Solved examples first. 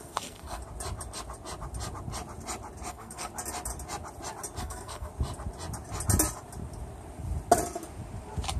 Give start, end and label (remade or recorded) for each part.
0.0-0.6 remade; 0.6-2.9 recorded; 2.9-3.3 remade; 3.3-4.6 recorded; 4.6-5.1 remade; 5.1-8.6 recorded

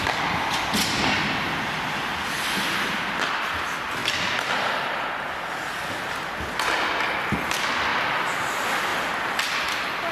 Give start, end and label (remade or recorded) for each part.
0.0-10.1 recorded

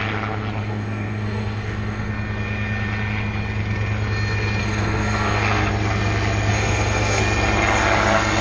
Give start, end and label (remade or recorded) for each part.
0.0-0.6 recorded; 0.6-2.1 remade; 2.1-4.6 recorded; 4.6-5.7 remade; 5.7-6.5 recorded; 6.5-7.2 remade; 7.2-8.4 recorded

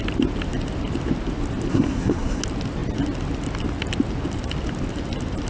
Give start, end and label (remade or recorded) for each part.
0.0-1.7 recorded; 1.7-2.4 remade; 2.4-5.5 recorded

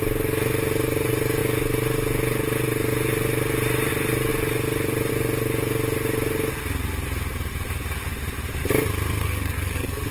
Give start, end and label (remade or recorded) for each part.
0.0-9.2 recorded; 9.2-10.1 remade

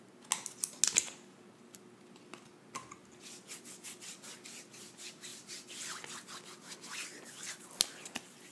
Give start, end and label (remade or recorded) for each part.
0.0-8.5 recorded

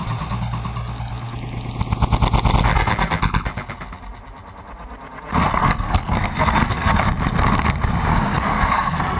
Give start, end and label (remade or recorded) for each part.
0.0-5.5 recorded; 5.5-7.0 remade; 7.0-8.1 recorded; 8.1-9.2 remade

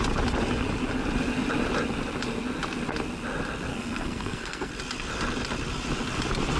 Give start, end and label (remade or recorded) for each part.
0.0-3.7 recorded; 3.7-4.7 remade; 4.7-6.6 recorded